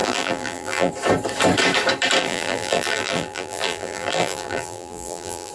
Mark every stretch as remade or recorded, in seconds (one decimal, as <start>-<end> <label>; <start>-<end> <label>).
0.0-0.9 remade; 0.9-2.2 recorded; 2.2-5.5 remade